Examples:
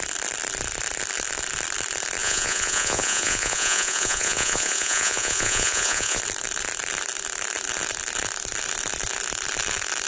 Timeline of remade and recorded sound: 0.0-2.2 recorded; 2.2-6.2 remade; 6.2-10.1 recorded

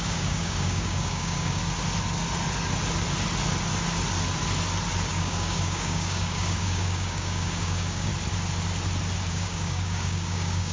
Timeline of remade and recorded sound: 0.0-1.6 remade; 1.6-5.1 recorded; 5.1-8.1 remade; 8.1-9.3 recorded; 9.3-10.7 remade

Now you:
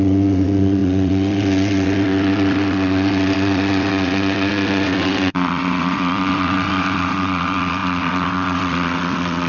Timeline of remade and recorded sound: 0.0-9.5 remade